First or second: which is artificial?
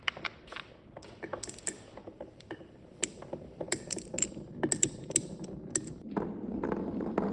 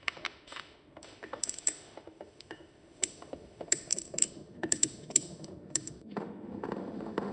second